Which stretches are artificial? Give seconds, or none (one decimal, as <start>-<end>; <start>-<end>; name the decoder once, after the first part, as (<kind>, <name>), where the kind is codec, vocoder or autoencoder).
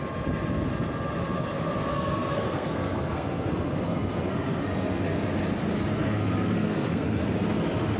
1.9-5.2 (codec, SNAC); 6.0-7.4